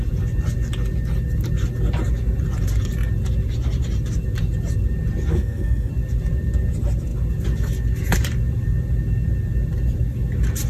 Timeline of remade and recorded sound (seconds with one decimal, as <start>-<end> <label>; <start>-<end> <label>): 0.0-5.3 recorded; 5.3-5.9 remade; 5.9-10.7 recorded